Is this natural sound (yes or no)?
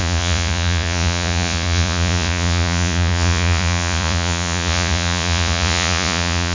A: no